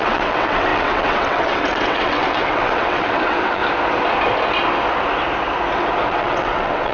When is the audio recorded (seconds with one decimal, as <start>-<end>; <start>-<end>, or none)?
3.6-6.1